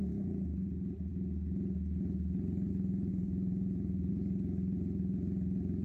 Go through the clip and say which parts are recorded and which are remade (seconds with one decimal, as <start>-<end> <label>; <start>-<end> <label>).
0.0-3.1 recorded; 3.1-4.1 remade; 4.1-5.8 recorded